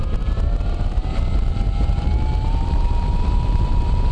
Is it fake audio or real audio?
fake